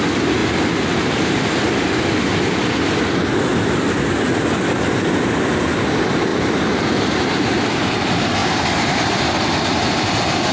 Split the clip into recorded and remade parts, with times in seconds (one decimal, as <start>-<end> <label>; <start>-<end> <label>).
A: 0.0-10.5 recorded